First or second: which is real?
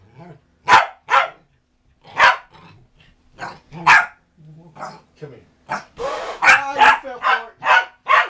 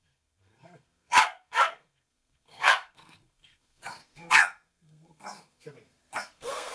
first